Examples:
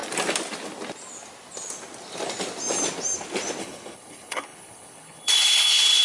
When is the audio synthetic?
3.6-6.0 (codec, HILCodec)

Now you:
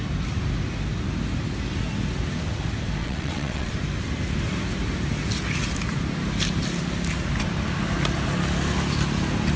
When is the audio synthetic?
3.0-3.7 (vocoder, WaveNeXt)